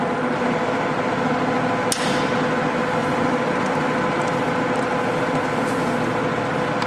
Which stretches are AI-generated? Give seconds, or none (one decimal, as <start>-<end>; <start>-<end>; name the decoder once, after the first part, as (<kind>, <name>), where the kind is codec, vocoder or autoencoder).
3.0-3.7 (vocoder, BigVGAN v2)